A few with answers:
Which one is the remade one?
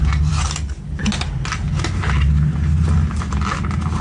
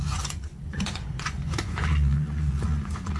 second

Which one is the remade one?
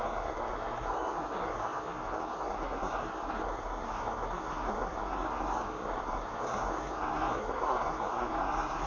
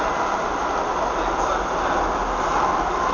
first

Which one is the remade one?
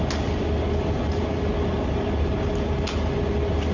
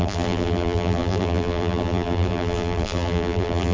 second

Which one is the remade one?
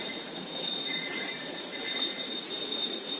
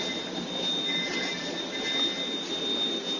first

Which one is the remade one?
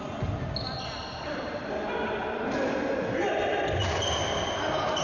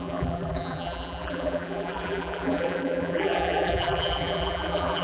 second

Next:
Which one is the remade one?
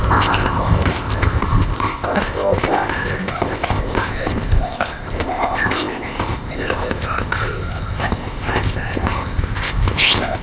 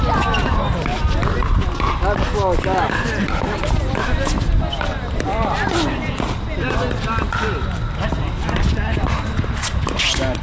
first